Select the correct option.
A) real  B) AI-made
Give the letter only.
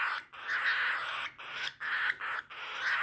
A